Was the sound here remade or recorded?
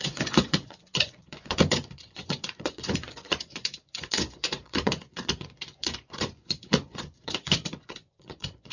remade